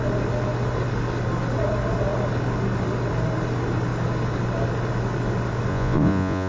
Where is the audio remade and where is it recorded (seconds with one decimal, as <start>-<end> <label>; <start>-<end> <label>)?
0.0-5.7 recorded; 5.7-6.5 remade